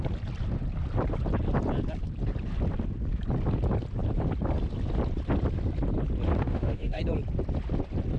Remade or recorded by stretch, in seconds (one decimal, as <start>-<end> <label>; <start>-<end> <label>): 0.0-6.4 recorded; 6.4-7.0 remade; 7.0-8.2 recorded